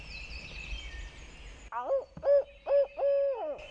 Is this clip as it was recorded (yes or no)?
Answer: yes